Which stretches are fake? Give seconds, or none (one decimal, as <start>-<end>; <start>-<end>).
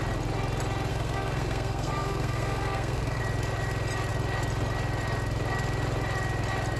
0.9-3.2